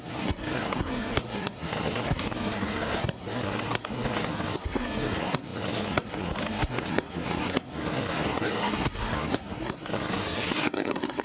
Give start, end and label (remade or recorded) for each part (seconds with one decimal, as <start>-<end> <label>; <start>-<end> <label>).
0.0-11.2 remade